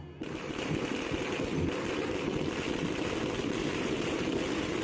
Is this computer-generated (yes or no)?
no